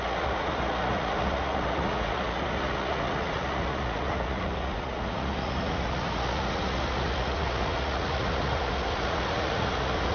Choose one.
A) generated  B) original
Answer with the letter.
A